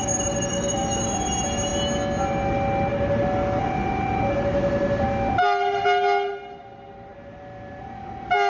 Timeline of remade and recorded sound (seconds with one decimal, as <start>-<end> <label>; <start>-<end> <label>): 0.0-0.5 recorded; 0.5-1.0 remade; 1.0-8.5 recorded